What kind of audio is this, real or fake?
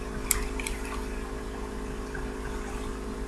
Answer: real